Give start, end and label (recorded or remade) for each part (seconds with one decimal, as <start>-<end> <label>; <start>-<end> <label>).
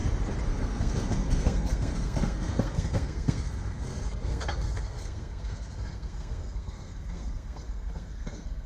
0.0-0.5 recorded; 0.5-8.7 remade